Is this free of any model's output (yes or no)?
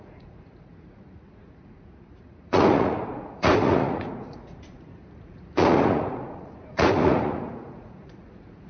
no